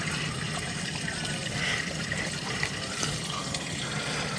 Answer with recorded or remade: recorded